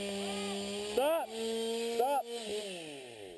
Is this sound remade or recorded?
recorded